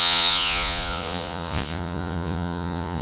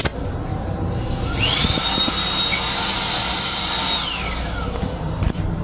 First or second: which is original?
second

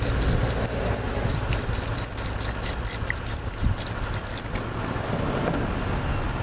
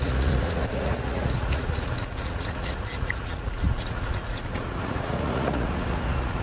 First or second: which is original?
first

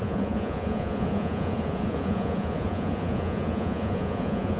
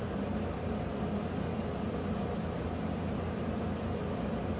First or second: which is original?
second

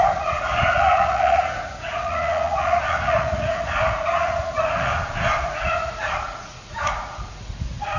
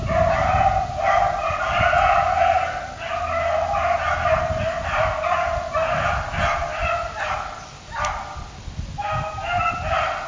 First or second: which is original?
second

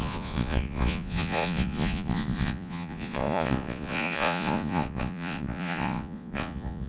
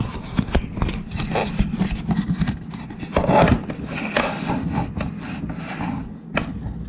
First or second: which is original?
second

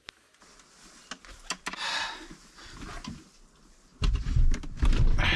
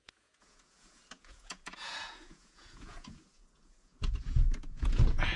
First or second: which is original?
first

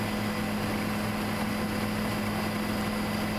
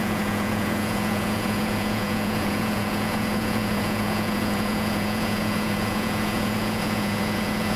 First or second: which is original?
first